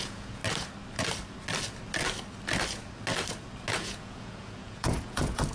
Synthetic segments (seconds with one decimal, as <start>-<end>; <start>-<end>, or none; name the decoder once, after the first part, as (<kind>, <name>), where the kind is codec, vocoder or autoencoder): 0.0-0.4 (vocoder, Vocos); 3.7-5.5